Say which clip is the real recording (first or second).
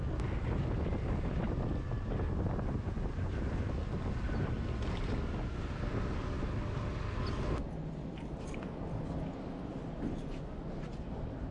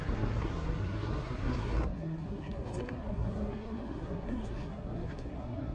first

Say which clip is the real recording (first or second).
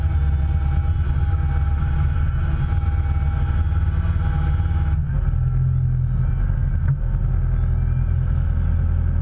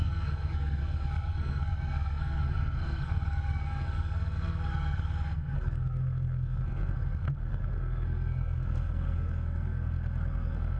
first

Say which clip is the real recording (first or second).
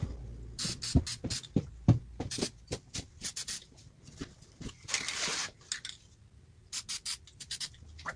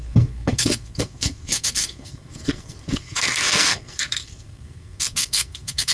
first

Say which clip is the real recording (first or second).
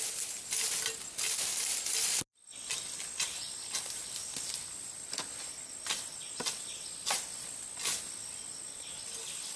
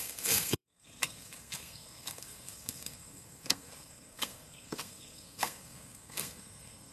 first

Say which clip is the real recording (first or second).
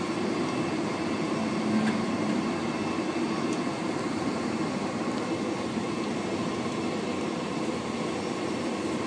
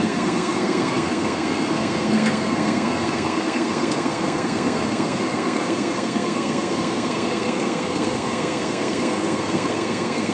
first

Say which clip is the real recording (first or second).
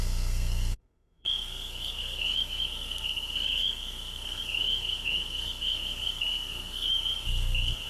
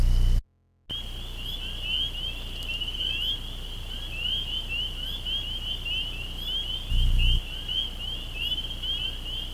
second